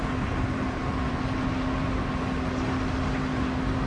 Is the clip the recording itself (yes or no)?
yes